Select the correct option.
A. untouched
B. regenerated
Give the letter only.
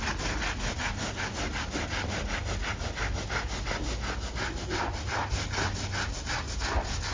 A